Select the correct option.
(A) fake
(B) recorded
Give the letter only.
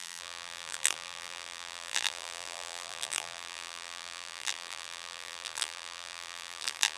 A